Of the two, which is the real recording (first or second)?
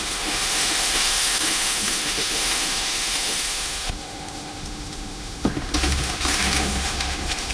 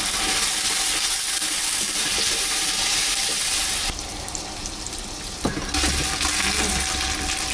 second